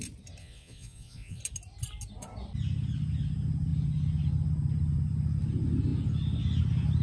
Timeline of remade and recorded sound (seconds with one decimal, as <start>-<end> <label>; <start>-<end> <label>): 0.0-0.4 recorded; 0.4-1.4 remade; 1.4-7.0 recorded